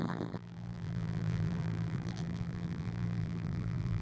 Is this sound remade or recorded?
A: remade